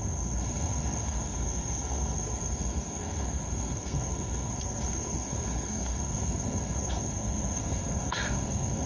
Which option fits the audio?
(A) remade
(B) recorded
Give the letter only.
A